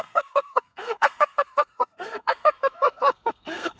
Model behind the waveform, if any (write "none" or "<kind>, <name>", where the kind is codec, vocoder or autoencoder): codec, SNAC